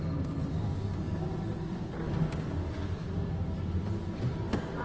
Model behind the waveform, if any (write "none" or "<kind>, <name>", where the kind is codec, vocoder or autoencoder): none